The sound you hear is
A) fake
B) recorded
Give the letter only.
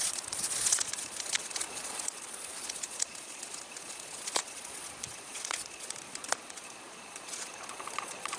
A